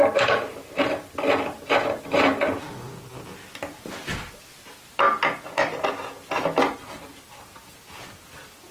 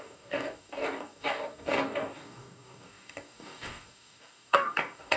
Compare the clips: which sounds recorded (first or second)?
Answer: first